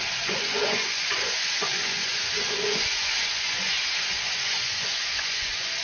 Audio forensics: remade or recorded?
remade